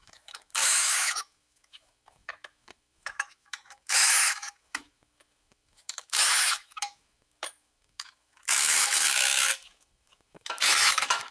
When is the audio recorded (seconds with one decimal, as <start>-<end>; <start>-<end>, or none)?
none